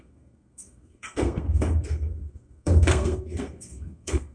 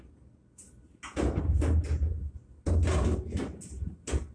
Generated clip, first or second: first